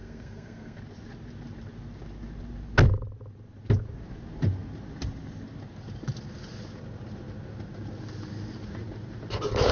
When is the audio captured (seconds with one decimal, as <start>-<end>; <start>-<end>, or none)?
0.8-9.7